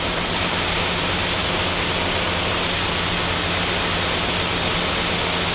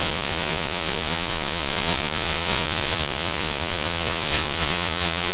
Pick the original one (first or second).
first